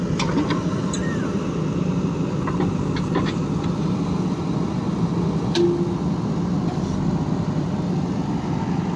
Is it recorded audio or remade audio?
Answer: recorded